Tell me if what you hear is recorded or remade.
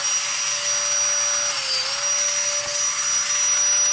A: recorded